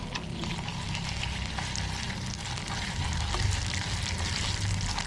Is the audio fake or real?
real